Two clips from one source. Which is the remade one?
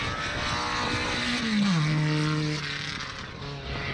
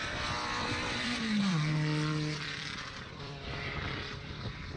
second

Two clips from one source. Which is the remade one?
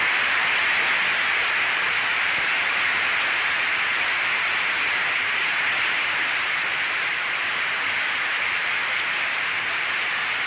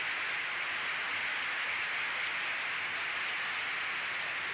first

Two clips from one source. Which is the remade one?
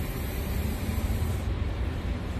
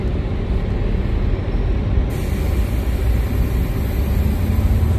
first